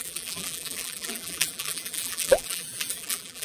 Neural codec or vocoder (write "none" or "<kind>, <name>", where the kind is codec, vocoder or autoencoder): vocoder, BigVGAN v2